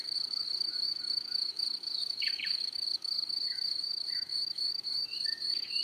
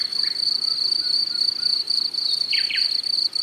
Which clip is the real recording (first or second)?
second